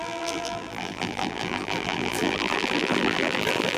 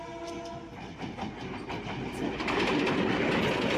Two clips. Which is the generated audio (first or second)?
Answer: first